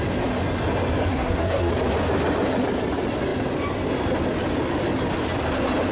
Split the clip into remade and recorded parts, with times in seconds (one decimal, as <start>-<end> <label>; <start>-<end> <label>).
0.0-1.1 recorded; 1.1-1.7 remade; 1.7-5.9 recorded